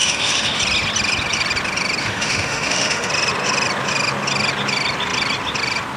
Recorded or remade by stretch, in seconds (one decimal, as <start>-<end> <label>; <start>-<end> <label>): 0.0-0.6 remade; 0.6-2.0 recorded; 2.0-3.1 remade; 3.1-6.0 recorded